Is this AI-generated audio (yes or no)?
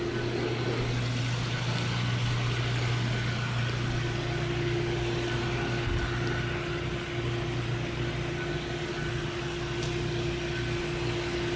no